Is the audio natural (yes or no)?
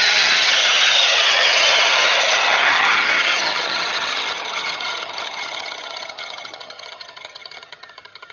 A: no